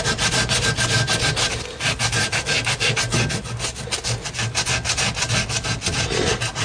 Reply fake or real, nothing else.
real